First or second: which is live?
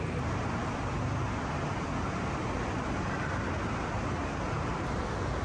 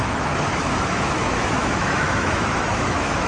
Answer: first